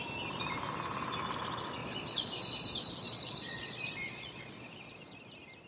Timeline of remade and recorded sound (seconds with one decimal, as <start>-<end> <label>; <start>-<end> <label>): 0.0-1.8 recorded; 1.8-5.2 remade; 5.2-5.7 recorded